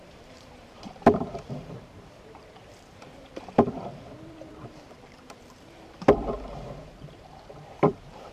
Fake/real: fake